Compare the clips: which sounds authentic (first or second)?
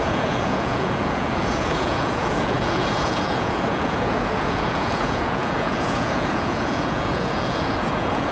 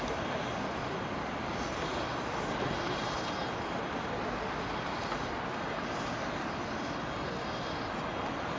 second